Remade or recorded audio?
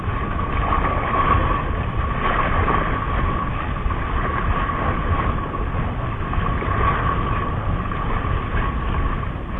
recorded